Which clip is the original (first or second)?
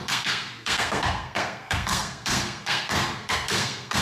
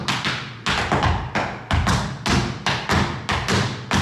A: second